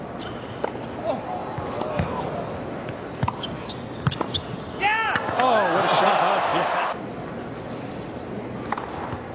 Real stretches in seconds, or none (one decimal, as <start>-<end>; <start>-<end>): 0.0-9.3